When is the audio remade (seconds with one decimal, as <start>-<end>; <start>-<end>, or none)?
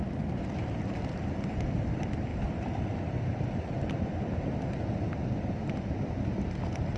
none